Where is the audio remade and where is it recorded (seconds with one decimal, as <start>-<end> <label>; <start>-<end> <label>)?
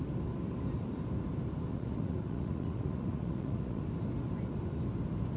0.0-1.7 recorded; 1.7-3.8 remade; 3.8-5.4 recorded